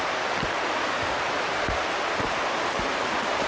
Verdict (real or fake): real